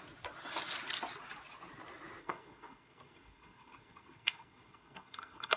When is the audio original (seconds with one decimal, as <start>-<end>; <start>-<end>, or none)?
0.0-2.2